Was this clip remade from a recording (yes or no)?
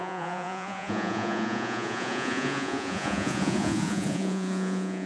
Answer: yes